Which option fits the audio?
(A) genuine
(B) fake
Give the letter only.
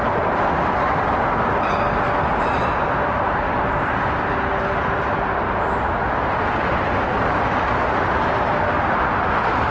A